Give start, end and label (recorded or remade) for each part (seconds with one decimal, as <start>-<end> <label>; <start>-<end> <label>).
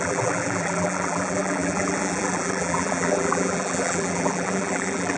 0.0-5.2 remade